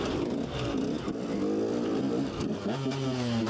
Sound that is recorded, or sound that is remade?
recorded